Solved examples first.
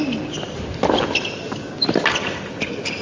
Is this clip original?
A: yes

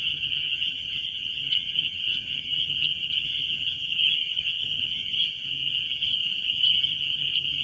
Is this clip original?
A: no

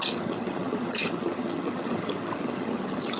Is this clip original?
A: no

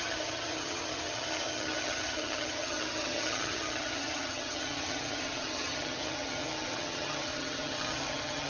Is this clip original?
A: no